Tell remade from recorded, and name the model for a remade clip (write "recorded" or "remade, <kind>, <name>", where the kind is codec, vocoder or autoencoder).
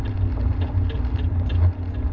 recorded